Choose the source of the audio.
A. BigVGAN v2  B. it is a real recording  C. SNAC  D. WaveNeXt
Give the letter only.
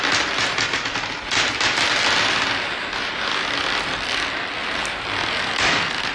B